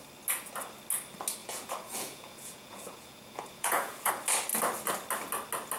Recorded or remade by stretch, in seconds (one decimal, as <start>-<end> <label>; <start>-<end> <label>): 0.0-1.4 recorded; 1.4-4.1 remade; 4.1-5.8 recorded